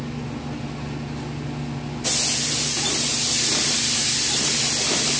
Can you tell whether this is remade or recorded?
recorded